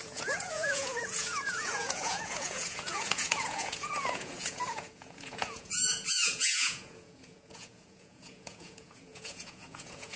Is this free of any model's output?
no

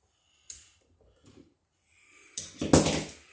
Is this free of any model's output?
yes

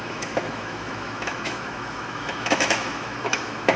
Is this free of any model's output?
no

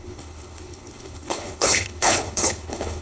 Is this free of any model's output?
no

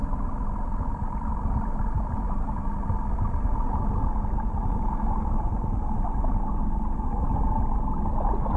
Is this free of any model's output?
yes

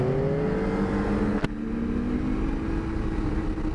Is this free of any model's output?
yes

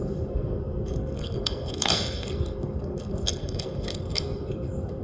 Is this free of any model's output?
no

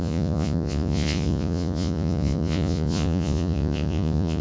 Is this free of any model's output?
no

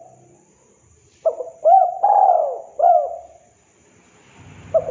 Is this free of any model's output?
yes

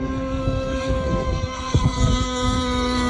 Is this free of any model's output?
no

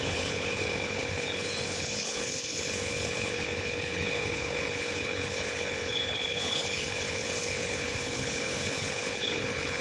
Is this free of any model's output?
no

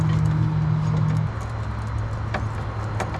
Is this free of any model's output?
yes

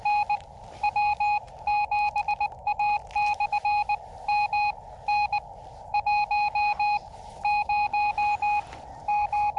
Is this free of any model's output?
yes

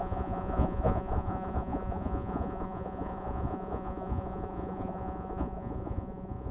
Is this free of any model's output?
no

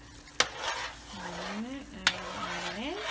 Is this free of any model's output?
yes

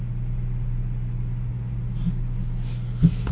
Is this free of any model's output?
yes